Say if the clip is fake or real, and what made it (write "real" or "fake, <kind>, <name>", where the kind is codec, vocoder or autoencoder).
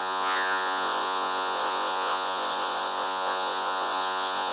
fake, vocoder, Vocos